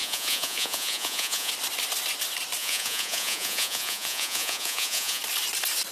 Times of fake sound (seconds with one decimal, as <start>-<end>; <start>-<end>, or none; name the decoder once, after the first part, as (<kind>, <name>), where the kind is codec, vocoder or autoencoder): 0.0-1.5 (vocoder, Vocos); 2.6-5.2